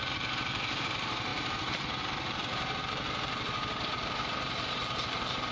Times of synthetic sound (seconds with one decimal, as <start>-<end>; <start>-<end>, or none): 0.0-5.5